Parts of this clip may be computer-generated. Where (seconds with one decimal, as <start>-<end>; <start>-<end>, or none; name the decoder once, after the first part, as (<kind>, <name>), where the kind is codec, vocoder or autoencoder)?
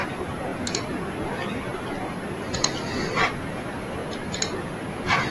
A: none